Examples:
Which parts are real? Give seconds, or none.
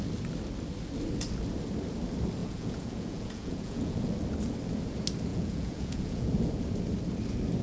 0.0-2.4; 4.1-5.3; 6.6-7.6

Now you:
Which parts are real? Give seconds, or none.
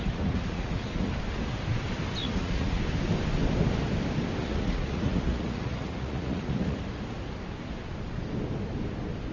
1.1-2.2; 2.8-4.4; 6.8-9.3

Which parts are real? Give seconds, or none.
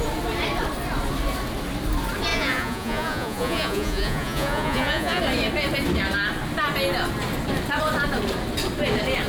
0.0-2.3; 5.2-9.3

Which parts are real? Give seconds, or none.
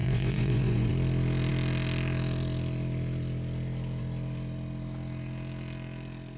0.9-6.4